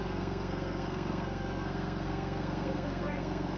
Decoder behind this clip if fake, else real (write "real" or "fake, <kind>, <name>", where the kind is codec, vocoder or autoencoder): fake, codec, SNAC